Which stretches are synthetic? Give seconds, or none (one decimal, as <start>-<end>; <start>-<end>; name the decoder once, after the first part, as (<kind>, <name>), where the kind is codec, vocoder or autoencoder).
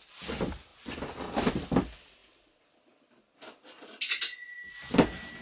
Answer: none